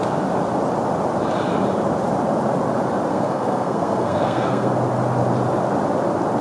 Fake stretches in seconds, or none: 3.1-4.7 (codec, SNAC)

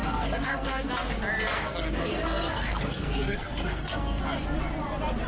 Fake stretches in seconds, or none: 0.0-0.9 (codec, SNAC); 1.5-4.2

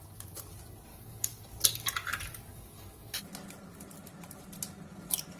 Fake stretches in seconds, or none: 0.9-1.4 (codec, DAC); 2.5-3.2

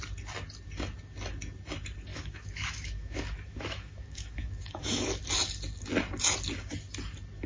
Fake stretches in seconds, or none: 2.1-5.1 (autoencoder, DAC-VAE)